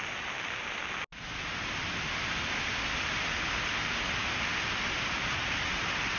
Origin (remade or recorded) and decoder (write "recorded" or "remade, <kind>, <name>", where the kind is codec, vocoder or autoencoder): recorded